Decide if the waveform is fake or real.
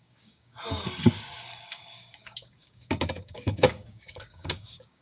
fake